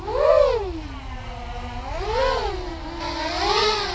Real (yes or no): yes